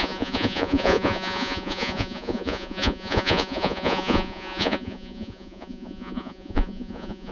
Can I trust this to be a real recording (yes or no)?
no